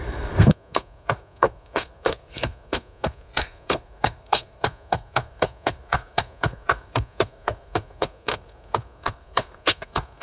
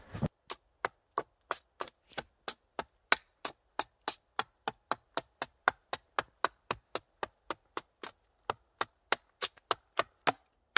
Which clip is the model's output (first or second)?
first